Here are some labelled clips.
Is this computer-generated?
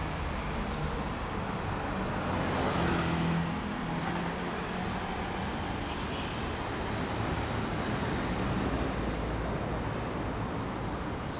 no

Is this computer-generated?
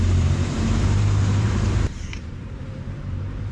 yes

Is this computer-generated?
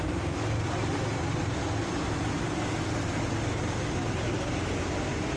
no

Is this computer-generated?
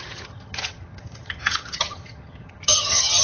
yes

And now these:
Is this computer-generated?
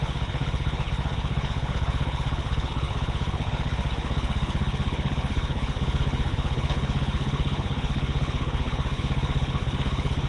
yes